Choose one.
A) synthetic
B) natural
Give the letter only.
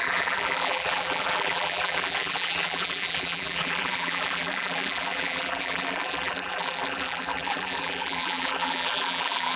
A